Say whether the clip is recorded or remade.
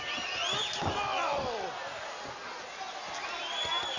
recorded